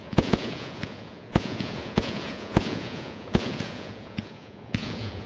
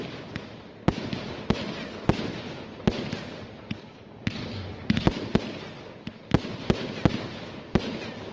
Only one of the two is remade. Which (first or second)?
first